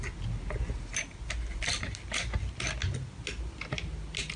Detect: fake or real real